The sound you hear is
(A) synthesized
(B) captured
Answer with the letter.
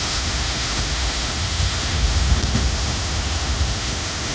A